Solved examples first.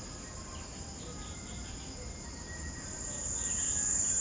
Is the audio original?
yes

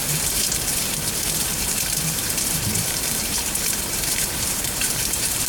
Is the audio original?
no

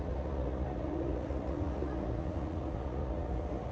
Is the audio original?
no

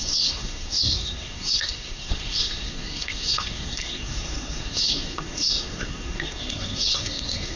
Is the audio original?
no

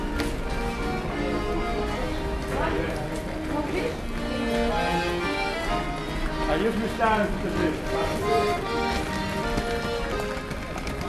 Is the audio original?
yes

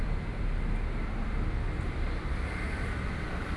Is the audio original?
no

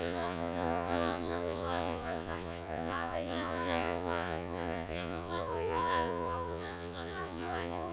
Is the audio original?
no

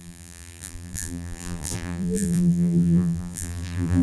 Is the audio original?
no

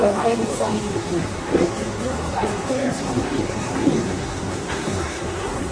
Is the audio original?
no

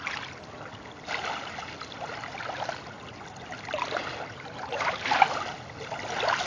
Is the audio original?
yes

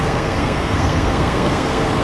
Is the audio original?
no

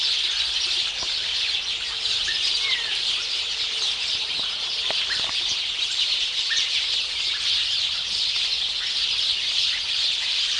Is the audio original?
no